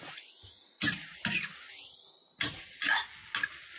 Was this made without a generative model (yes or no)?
yes